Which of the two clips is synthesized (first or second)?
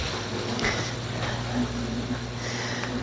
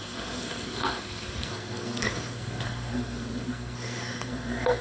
second